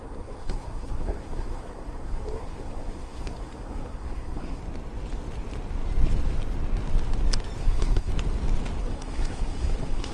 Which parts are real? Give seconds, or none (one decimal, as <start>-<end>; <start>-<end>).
4.6-7.6; 8.1-8.8